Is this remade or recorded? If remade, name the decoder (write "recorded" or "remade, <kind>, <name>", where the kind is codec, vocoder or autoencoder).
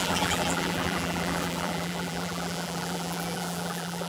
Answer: remade, vocoder, BigVGAN v2